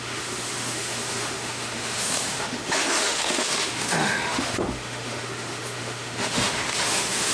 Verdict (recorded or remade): remade